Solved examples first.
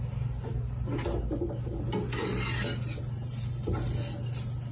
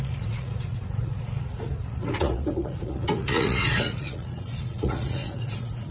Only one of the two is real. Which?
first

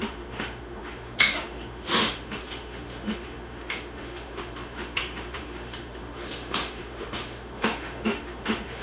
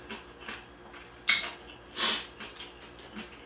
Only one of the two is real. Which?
second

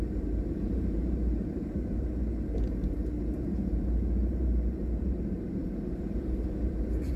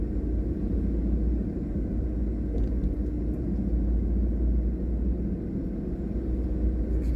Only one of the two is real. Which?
second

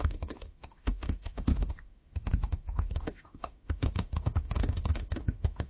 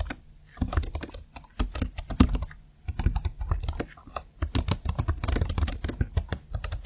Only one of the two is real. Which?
second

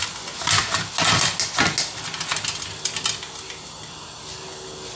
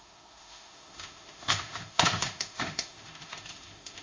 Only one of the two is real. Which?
first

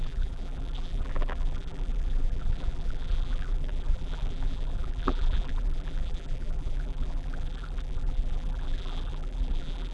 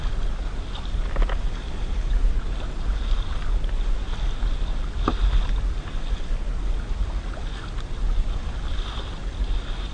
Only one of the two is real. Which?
second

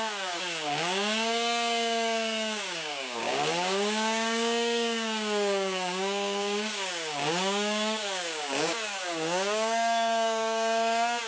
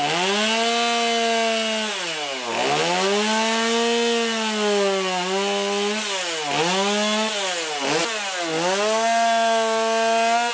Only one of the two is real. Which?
second